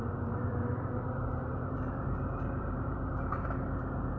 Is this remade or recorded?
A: remade